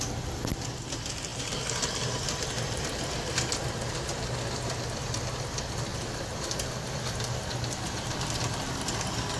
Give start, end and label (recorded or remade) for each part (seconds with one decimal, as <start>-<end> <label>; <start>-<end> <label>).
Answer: 0.0-5.9 recorded; 5.9-8.9 remade; 8.9-9.4 recorded